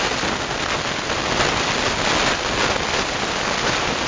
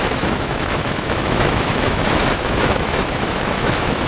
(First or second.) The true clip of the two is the first